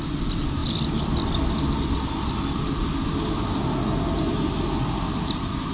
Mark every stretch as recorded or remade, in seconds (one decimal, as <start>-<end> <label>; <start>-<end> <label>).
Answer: 0.0-5.7 recorded